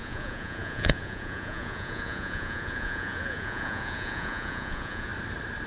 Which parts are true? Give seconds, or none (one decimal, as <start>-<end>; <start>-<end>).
5.1-5.7